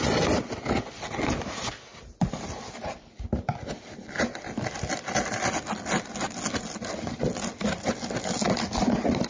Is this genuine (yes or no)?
yes